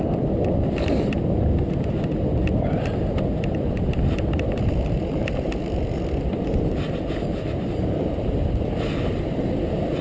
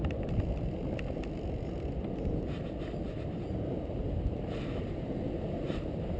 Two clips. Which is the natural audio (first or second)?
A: second